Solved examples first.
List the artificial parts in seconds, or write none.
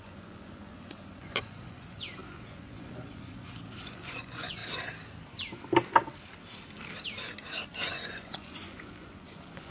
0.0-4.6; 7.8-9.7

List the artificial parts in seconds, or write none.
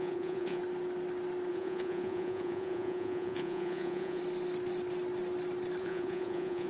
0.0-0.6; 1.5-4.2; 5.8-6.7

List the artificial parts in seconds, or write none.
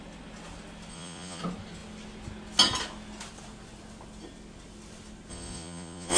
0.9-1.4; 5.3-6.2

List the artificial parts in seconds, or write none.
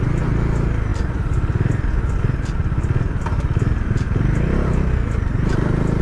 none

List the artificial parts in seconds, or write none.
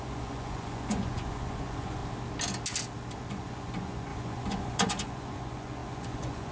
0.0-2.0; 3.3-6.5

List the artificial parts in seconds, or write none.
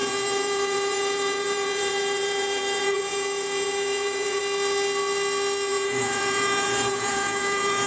0.0-4.4; 5.7-7.9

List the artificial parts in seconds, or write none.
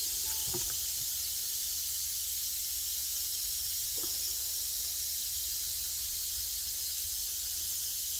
3.0-4.4; 5.3-6.1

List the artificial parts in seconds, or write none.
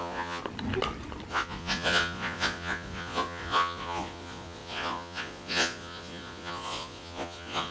0.0-0.4; 1.3-7.7